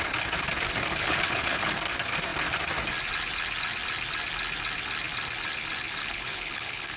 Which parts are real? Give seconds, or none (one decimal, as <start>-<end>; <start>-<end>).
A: 0.0-0.9; 1.7-6.0